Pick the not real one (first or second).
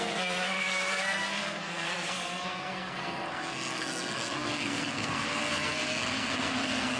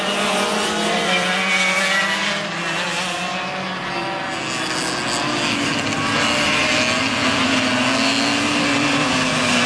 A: first